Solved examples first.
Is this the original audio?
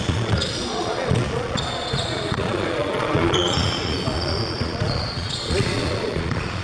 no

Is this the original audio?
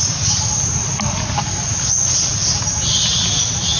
yes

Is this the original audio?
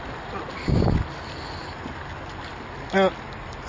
yes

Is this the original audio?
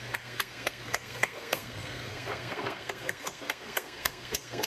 no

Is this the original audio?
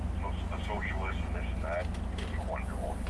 yes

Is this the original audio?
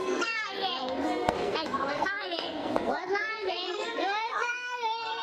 no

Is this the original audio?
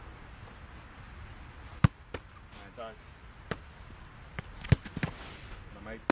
yes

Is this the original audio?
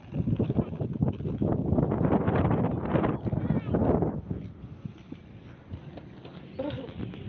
yes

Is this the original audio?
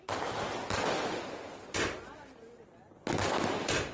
yes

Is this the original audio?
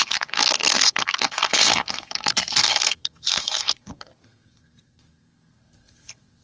no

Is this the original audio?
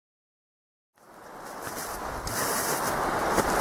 yes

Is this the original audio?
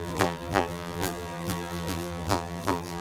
no